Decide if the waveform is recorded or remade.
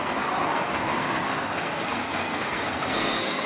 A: remade